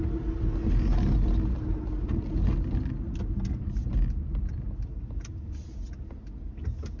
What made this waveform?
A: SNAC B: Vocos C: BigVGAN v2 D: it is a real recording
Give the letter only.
D